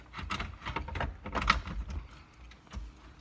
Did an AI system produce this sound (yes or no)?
no